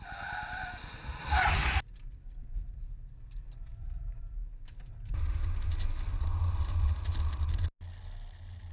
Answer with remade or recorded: recorded